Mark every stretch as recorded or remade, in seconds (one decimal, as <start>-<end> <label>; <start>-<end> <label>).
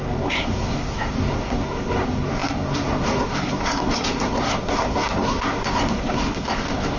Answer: 0.0-7.0 remade